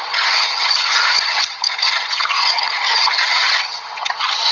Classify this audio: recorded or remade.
remade